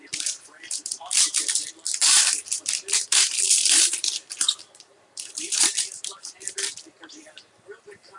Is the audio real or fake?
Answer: fake